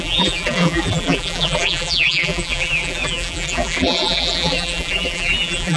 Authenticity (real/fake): fake